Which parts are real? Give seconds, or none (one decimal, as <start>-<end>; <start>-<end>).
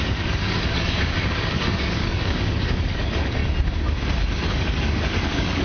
3.4-4.5